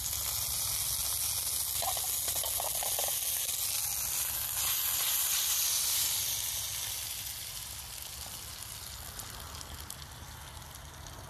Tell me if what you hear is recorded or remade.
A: recorded